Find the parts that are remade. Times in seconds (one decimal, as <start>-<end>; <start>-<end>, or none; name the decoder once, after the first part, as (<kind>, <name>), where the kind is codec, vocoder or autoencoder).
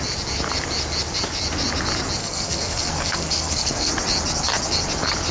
2.2-3.9 (codec, SNAC)